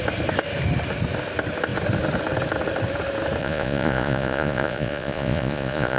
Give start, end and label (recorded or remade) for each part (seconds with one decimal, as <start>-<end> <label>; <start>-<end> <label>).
0.0-3.4 recorded; 3.4-6.0 remade